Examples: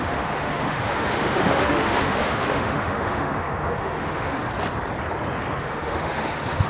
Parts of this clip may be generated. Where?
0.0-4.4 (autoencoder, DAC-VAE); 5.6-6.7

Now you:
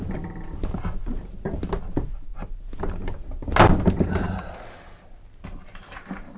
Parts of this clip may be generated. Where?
none